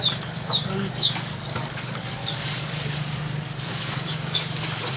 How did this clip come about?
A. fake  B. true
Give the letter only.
A